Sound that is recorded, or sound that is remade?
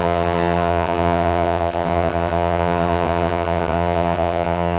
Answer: remade